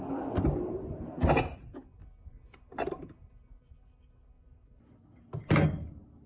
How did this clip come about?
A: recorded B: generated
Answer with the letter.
A